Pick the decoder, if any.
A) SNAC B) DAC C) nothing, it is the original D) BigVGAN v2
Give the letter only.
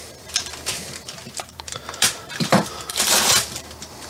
D